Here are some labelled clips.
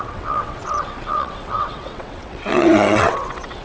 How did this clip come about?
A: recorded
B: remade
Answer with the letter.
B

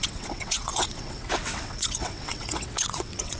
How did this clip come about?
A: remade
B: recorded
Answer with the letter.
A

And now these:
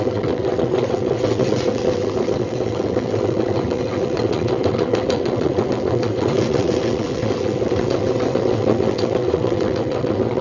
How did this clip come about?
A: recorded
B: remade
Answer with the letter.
B